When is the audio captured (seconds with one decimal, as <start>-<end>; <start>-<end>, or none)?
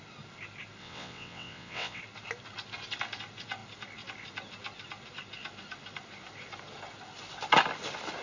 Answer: 0.0-0.8; 2.0-8.2